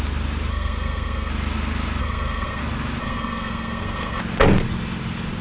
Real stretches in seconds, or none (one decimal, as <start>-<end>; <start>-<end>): 0.0-0.5; 1.3-2.0; 2.6-3.0; 4.2-5.4